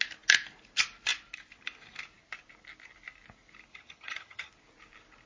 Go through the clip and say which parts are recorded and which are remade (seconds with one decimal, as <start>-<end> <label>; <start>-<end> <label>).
0.0-3.7 recorded; 3.7-4.5 remade; 4.5-5.3 recorded